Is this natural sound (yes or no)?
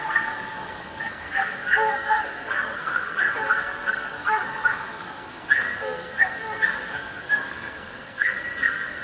no